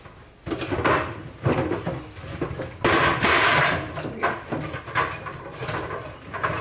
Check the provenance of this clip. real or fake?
real